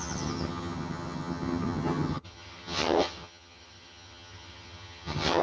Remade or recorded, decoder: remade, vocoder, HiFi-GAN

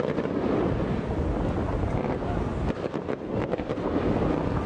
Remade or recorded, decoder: recorded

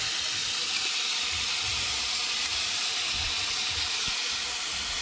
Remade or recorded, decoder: recorded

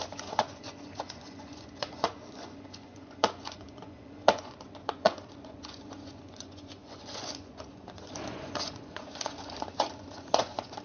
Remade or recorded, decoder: remade, vocoder, Vocos